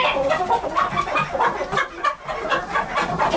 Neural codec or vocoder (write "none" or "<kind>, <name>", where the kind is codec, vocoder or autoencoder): none